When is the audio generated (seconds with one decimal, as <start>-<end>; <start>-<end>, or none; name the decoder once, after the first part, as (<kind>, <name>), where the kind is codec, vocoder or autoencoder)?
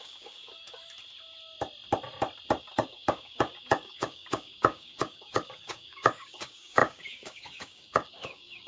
0.0-0.8 (codec, DAC); 2.6-8.7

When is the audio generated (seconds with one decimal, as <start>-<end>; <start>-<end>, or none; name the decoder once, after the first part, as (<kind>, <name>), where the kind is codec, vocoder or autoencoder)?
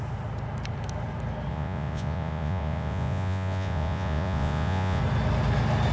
1.5-5.0 (vocoder, Vocos)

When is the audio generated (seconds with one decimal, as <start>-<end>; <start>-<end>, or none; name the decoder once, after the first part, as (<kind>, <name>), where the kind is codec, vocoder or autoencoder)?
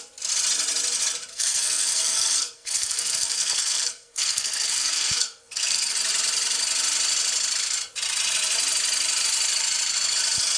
1.3-5.9 (codec, SNAC)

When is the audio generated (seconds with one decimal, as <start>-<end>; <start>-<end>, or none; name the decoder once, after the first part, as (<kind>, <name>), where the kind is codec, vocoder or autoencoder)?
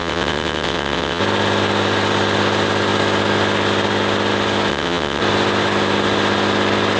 0.0-1.2 (vocoder, WaveNeXt); 4.7-5.2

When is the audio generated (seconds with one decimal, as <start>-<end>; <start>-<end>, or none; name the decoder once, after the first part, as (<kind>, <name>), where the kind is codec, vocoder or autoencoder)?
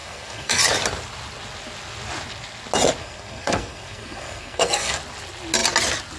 0.0-0.6 (codec, SNAC); 3.0-5.0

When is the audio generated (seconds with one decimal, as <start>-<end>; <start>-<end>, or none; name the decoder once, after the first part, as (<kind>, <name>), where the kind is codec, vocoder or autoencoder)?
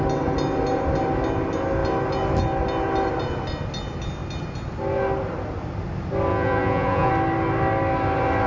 6.3-7.1 (vocoder, Vocos)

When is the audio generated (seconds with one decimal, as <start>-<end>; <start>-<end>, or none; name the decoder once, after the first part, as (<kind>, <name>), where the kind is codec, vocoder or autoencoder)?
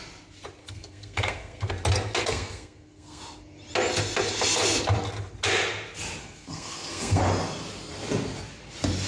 0.6-1.7 (codec, SNAC); 2.2-3.2; 6.2-7.2